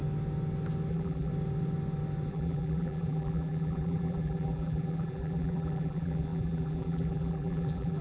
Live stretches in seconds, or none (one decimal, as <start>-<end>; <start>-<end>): 0.0-0.9; 1.3-2.3